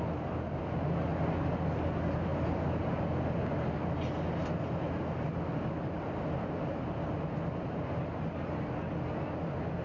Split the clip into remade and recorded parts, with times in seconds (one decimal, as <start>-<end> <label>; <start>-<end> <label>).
0.0-9.8 recorded